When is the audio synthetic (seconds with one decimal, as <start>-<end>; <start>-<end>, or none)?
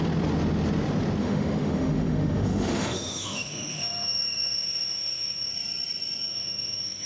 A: 1.2-5.5; 6.3-7.1